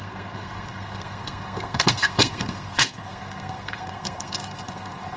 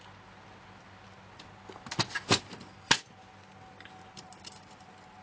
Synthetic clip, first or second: first